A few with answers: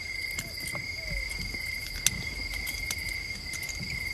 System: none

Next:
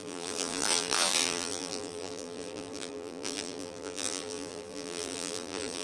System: vocoder, BigVGAN v2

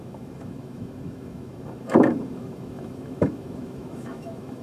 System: autoencoder, DAC-VAE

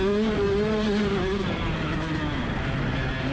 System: none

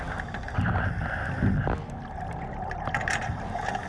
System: none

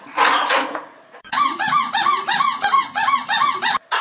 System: vocoder, Vocos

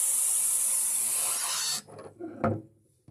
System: none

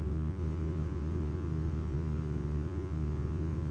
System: vocoder, Vocos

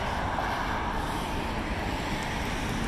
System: none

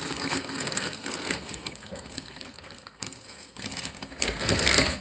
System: codec, SNAC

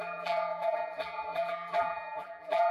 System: vocoder, BigVGAN v2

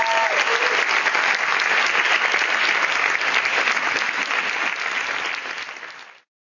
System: none